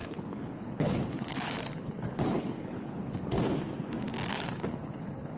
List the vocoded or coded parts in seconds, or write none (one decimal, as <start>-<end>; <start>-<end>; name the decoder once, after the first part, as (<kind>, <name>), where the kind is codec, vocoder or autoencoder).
0.0-3.2 (codec, HILCodec); 4.3-5.4